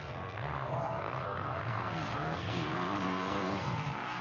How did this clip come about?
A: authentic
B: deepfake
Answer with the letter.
B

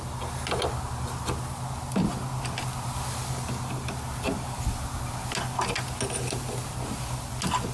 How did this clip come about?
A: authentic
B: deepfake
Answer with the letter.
A